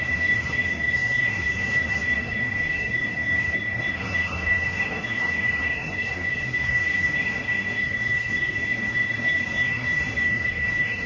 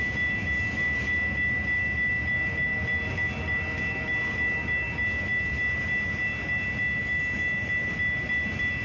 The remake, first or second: first